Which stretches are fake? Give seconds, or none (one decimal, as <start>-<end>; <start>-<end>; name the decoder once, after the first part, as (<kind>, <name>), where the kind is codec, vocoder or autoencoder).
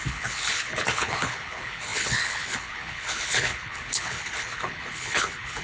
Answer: 0.0-5.6 (codec, HILCodec)